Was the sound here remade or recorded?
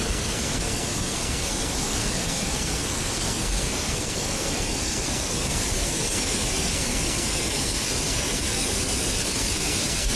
remade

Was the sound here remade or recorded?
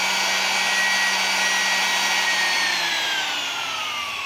recorded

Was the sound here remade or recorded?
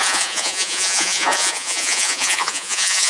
remade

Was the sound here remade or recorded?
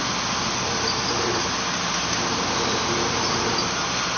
recorded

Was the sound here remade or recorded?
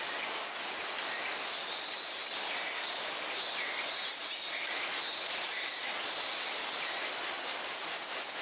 recorded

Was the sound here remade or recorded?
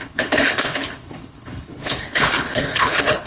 remade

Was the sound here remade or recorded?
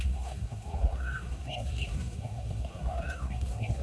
remade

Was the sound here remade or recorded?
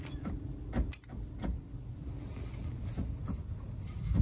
remade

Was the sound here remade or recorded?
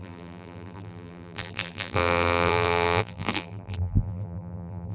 remade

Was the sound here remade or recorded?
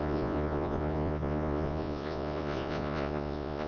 remade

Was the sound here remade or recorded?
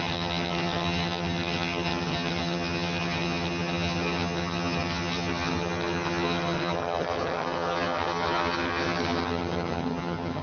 remade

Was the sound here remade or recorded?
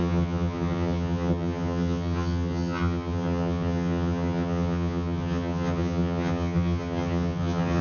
remade